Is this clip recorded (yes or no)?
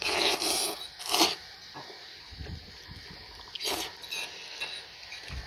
yes